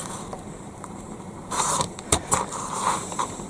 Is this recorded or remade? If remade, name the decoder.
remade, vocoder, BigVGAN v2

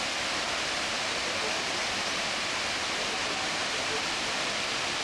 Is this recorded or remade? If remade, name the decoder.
recorded